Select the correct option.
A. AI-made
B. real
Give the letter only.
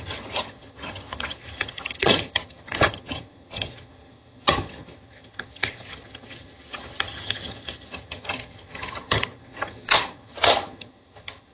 A